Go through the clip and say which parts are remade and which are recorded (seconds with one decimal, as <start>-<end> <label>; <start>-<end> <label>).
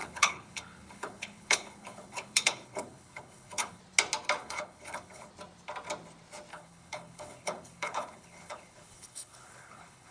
0.0-3.8 remade; 3.8-4.4 recorded; 4.4-5.3 remade; 5.3-6.5 recorded; 6.5-10.1 remade